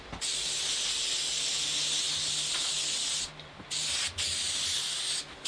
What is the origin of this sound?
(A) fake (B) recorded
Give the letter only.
B